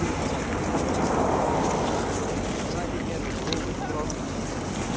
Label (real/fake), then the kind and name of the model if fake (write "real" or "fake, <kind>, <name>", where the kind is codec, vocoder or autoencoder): real